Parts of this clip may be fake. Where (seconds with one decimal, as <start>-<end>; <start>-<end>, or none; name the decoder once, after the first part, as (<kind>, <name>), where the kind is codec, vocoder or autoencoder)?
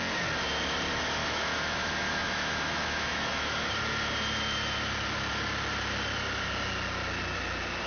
1.2-3.7 (autoencoder, DAC-VAE)